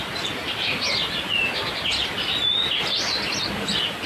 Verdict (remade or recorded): recorded